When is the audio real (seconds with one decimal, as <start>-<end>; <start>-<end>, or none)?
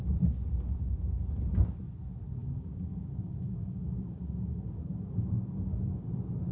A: 0.0-2.4; 6.1-6.5